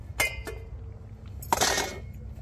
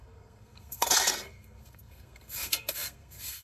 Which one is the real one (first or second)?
first